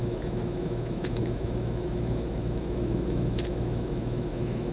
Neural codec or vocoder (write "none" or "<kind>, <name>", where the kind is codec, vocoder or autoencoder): autoencoder, DAC-VAE